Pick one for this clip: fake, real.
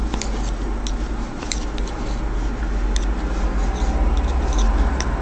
real